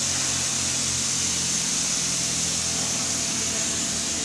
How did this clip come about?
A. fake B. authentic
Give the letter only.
B